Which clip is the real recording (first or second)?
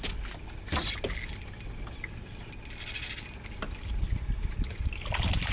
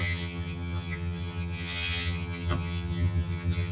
first